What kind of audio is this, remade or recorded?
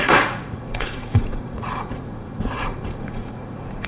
remade